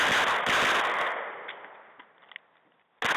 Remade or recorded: recorded